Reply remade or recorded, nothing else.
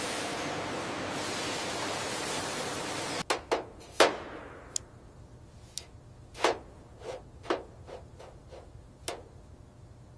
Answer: recorded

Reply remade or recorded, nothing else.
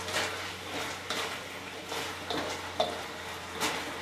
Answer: recorded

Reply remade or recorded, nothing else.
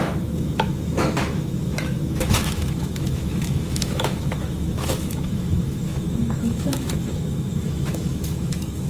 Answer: remade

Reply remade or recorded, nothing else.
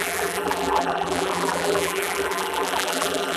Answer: remade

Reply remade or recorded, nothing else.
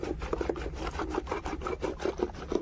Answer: remade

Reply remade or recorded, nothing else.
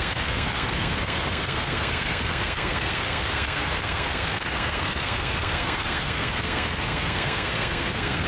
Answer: remade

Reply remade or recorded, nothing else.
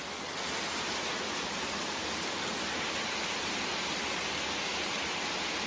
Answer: recorded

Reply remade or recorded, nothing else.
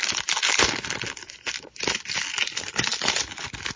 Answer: recorded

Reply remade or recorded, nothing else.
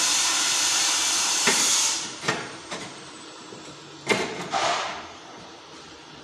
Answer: remade